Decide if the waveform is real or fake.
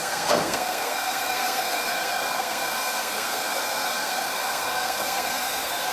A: fake